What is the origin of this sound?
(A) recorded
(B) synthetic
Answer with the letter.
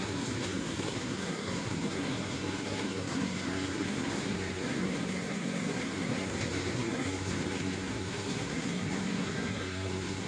B